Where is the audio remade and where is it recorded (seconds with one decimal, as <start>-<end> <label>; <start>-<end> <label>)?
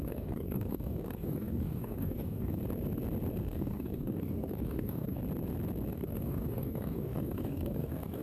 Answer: 0.0-2.6 remade; 2.6-3.4 recorded; 3.4-5.2 remade; 5.2-5.9 recorded; 5.9-8.2 remade